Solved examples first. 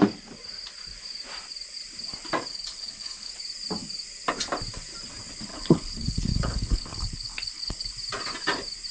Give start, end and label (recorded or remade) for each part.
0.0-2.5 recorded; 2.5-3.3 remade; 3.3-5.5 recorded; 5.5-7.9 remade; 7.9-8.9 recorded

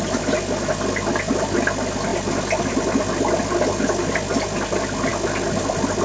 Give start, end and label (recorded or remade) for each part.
0.0-6.0 recorded

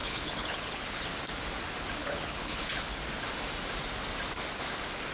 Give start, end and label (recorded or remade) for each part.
0.0-1.0 remade; 1.0-2.0 recorded; 2.0-3.0 remade; 3.0-5.1 recorded

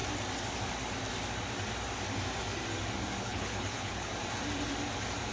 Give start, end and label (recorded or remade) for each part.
0.0-3.2 recorded; 3.2-4.1 remade; 4.1-5.3 recorded

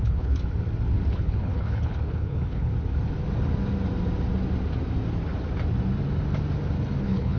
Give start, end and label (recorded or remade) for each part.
0.0-0.4 remade; 0.4-1.1 recorded; 1.1-2.7 remade; 2.7-7.0 recorded; 7.0-7.4 remade